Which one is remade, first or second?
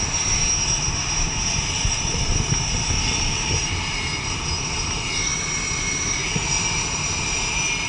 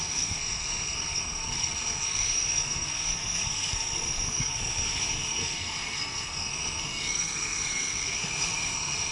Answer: second